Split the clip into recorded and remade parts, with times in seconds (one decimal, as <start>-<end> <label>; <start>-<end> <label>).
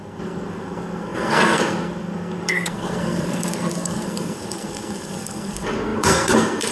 0.0-6.7 remade